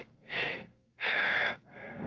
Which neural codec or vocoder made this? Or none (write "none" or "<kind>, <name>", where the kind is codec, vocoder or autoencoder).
codec, SNAC